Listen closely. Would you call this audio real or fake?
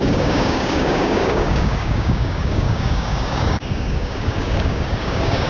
fake